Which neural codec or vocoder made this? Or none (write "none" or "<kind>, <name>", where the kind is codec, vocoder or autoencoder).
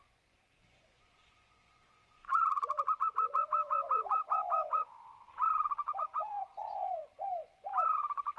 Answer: vocoder, Vocos